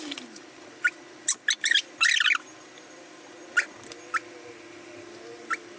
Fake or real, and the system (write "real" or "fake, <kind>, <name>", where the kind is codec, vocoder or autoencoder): real